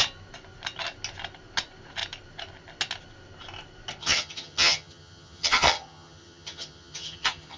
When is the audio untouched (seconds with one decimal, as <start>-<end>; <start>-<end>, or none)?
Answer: 0.0-4.0